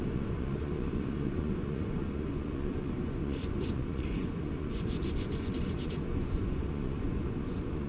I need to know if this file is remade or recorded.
remade